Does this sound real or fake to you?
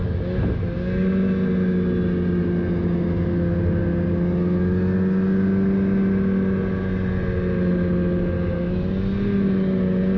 real